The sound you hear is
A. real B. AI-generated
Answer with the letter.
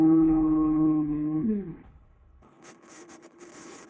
B